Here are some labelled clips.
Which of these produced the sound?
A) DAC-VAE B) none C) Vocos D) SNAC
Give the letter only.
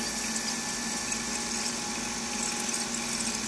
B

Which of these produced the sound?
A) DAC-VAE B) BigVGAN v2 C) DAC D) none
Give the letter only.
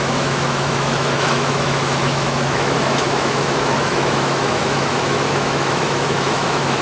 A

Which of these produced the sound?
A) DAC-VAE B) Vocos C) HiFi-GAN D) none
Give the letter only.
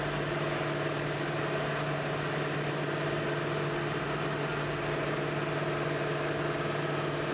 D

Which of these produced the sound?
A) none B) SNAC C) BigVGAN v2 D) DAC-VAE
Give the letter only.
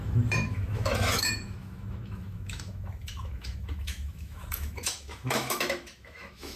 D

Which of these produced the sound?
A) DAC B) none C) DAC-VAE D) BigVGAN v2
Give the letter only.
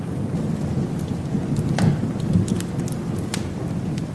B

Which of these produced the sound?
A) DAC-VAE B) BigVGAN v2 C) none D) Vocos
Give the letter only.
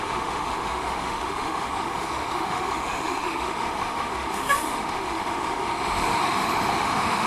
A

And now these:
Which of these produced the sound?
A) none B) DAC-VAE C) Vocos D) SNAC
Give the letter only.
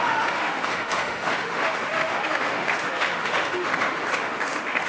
B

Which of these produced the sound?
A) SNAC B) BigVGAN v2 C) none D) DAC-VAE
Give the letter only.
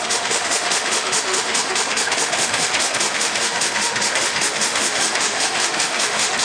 D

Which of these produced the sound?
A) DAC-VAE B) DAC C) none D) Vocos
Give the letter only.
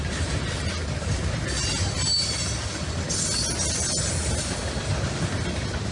C